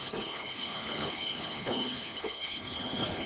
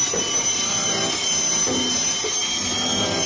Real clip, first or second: second